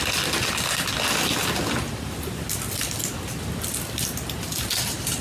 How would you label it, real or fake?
real